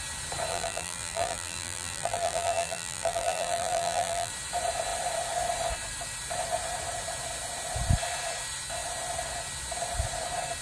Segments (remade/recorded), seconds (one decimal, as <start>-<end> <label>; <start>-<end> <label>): 0.0-0.5 recorded; 0.5-4.3 remade; 4.3-10.6 recorded